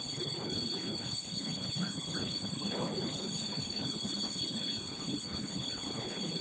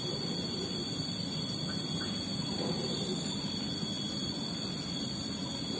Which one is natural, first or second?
second